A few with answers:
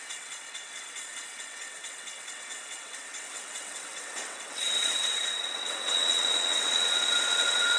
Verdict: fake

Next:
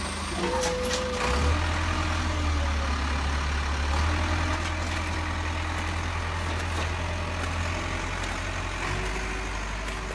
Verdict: real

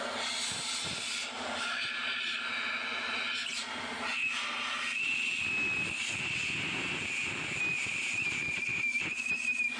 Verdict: real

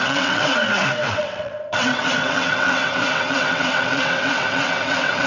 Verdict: fake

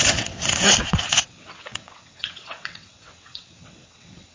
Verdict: fake